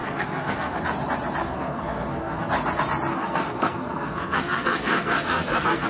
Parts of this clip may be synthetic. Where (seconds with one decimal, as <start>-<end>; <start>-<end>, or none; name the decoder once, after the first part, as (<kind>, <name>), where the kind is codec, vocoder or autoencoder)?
0.0-0.8 (codec, SNAC); 1.4-2.5; 3.1-5.9